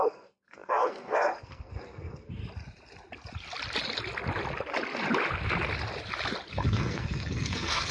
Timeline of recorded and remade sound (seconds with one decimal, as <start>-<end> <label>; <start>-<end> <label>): 0.0-2.4 remade; 2.4-6.5 recorded; 6.5-7.9 remade